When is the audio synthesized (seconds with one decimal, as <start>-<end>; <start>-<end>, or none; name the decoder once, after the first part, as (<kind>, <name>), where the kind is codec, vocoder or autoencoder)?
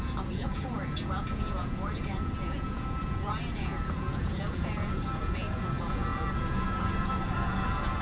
0.0-8.0 (vocoder, Vocos)